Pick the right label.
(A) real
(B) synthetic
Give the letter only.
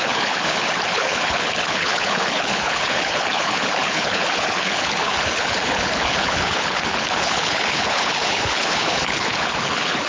B